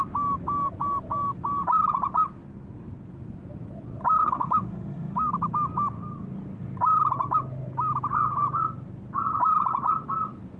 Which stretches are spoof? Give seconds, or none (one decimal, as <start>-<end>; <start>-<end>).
4.2-5.3